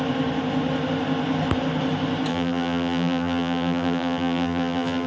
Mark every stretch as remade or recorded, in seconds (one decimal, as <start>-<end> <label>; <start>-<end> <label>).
0.0-2.3 recorded; 2.3-5.1 remade